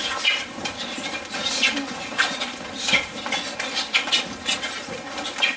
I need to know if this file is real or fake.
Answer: real